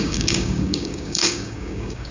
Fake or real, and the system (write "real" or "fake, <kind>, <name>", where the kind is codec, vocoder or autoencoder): fake, codec, DAC